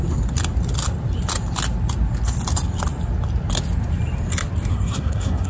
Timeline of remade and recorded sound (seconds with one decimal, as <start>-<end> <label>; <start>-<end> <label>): 0.0-4.7 recorded; 4.7-5.5 remade